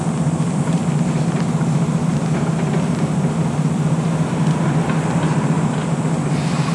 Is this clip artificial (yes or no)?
no